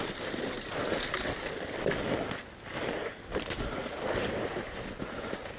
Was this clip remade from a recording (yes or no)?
no